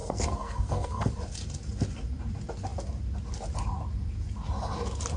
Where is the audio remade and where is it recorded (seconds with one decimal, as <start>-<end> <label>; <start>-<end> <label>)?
0.0-1.1 remade; 1.1-5.2 recorded